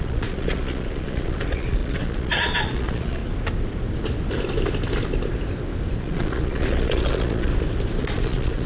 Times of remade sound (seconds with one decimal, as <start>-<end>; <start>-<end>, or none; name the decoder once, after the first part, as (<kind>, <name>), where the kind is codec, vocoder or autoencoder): 0.0-3.2 (vocoder, Vocos); 6.0-7.5; 8.0-8.7